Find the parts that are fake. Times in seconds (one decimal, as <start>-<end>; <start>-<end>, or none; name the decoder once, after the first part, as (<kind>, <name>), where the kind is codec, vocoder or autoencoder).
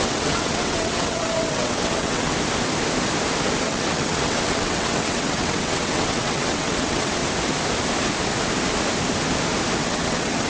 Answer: 0.0-2.3 (vocoder, WaveNeXt); 3.6-7.2; 9.8-10.5